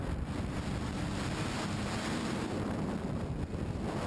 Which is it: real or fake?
real